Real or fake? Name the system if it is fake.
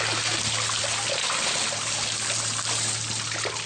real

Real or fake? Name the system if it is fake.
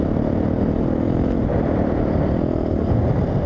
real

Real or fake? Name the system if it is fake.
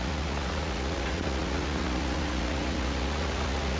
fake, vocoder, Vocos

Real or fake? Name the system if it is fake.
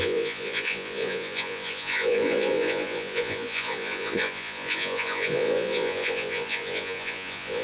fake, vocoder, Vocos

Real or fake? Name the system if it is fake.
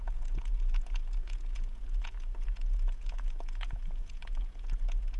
fake, vocoder, Vocos